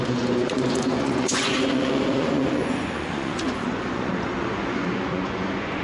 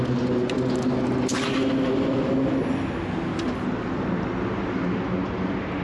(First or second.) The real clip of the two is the second